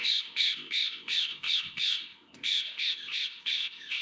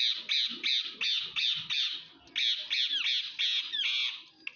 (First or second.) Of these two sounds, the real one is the second